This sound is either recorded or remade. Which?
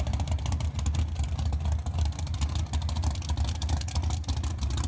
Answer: recorded